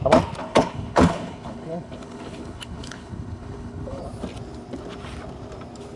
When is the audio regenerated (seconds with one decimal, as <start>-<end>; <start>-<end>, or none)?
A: 0.4-4.0